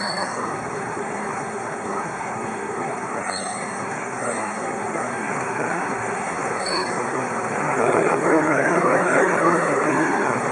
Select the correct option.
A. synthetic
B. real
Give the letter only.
A